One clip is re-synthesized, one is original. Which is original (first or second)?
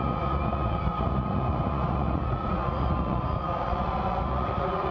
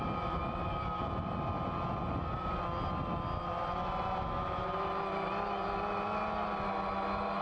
second